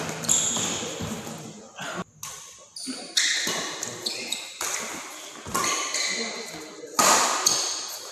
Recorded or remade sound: recorded